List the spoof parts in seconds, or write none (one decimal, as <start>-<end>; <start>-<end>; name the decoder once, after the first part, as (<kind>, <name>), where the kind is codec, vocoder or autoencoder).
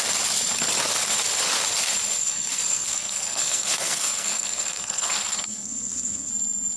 2.2-6.3 (codec, SNAC)